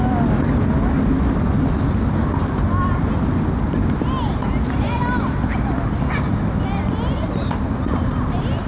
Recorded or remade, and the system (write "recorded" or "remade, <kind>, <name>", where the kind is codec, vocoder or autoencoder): recorded